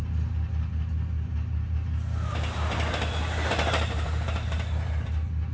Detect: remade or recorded recorded